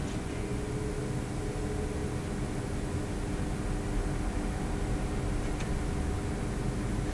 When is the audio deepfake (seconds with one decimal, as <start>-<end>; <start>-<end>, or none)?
0.0-0.7